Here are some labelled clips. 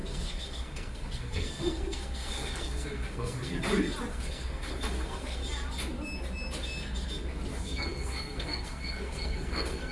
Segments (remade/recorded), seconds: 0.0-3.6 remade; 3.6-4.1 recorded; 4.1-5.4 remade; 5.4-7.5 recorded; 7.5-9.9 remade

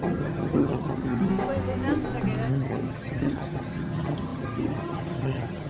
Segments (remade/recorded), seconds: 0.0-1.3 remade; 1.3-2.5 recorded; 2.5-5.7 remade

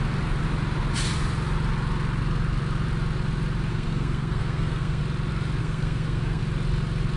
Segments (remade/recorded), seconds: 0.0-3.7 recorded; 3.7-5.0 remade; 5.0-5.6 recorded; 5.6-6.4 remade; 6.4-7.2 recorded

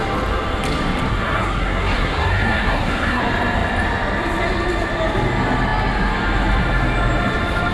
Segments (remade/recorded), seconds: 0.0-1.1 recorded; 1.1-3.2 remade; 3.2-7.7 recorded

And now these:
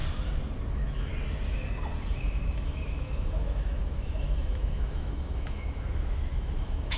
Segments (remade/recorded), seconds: 0.0-0.7 recorded; 0.7-1.1 remade; 1.1-2.2 recorded; 2.2-7.0 remade

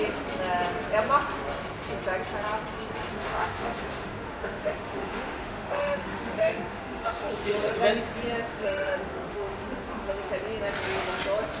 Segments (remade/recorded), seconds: 0.0-3.1 recorded; 3.1-7.7 remade; 7.7-8.5 recorded; 8.5-10.3 remade; 10.3-11.6 recorded

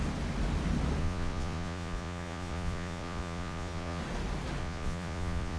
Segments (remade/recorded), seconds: 0.0-1.0 recorded; 1.0-4.0 remade; 4.0-4.6 recorded; 4.6-5.6 remade

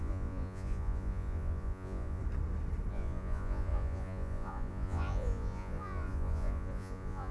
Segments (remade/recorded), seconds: 0.0-2.2 remade; 2.2-2.9 recorded; 2.9-7.3 remade